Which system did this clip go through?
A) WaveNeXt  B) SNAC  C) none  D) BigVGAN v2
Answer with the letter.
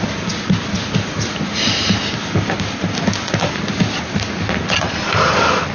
C